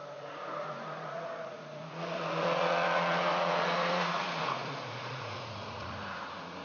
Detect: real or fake fake